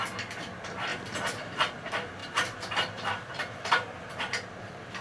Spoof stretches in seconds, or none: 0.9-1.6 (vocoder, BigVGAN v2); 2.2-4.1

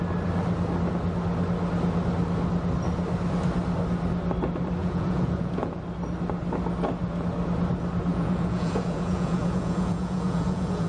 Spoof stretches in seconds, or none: 4.8-5.8 (vocoder, Vocos); 8.1-10.9

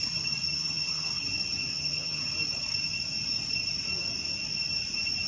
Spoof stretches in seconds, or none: 0.5-1.1 (vocoder, HiFi-GAN); 1.7-2.2

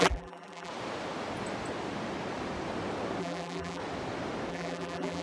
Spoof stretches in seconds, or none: 0.0-0.7 (vocoder, BigVGAN v2); 3.2-3.8; 4.5-5.2

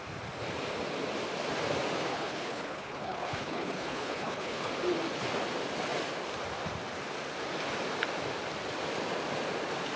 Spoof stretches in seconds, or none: 2.1-4.7 (codec, HILCodec)

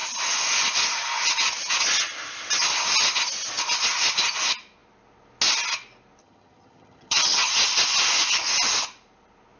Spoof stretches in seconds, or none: 6.2-7.5 (vocoder, HiFi-GAN)

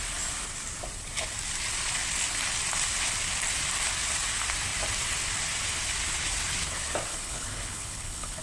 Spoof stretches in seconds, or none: 7.1-8.4 (codec, HILCodec)